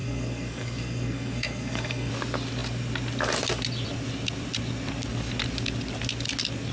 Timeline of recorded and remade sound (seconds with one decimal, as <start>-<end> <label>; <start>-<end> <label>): 0.0-2.1 remade; 2.1-6.7 recorded